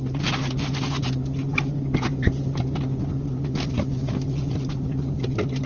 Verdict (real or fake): real